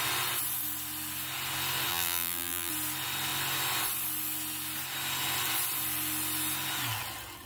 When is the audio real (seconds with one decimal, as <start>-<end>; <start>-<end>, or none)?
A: 0.0-1.9; 2.7-7.5